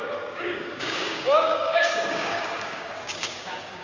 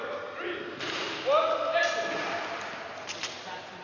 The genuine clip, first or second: second